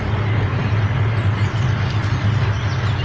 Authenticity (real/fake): real